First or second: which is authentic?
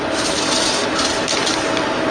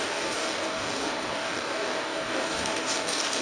first